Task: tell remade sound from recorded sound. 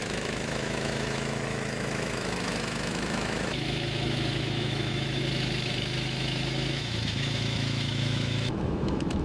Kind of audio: remade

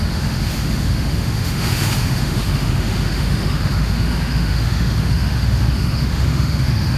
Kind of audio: remade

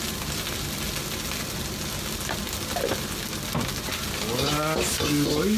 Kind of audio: recorded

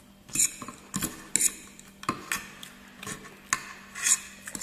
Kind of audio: recorded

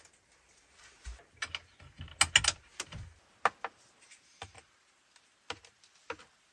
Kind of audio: recorded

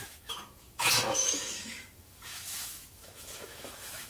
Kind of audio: remade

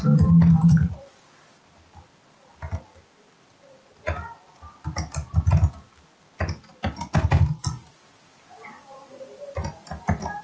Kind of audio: recorded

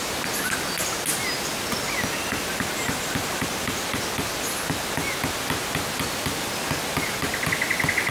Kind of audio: recorded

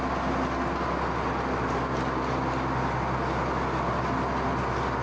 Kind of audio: recorded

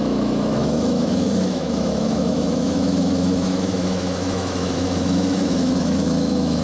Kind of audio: remade